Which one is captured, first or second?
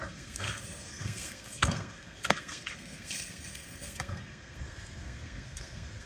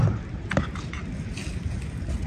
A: second